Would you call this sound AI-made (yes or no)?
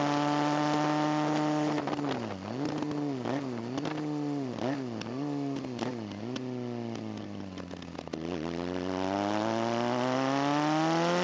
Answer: no